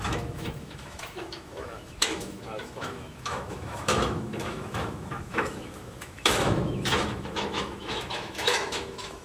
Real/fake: fake